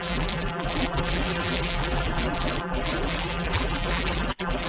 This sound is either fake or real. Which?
fake